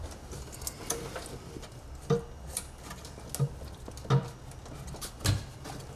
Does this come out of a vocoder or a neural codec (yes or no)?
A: no